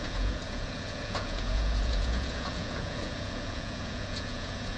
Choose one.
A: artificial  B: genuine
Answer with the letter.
A